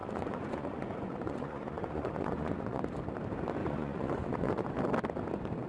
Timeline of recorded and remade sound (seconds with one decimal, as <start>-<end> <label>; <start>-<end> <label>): 0.0-2.8 remade; 2.8-3.6 recorded; 3.6-4.8 remade; 4.8-5.7 recorded